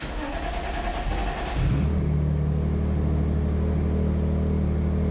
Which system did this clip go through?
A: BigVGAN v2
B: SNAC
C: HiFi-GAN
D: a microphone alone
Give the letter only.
D